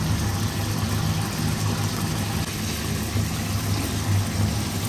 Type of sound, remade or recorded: recorded